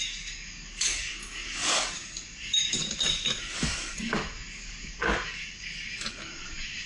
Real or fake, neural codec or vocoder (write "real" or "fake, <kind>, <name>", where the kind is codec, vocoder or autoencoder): fake, codec, DAC